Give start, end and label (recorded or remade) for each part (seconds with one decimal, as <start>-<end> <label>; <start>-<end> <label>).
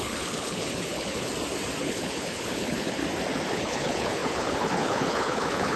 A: 0.0-1.3 remade; 1.3-1.8 recorded; 1.8-3.0 remade; 3.0-3.5 recorded; 3.5-5.8 remade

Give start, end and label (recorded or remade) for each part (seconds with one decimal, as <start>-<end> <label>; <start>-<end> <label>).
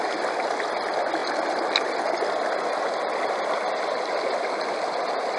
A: 0.0-5.4 recorded